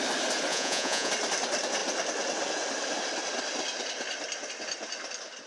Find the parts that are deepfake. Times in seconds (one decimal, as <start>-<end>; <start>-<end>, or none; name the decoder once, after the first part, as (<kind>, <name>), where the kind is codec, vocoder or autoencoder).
0.5-1.1 (vocoder, Vocos)

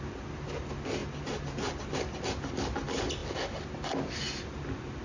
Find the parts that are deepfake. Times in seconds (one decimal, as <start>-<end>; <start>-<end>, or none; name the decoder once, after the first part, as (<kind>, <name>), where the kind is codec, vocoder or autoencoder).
none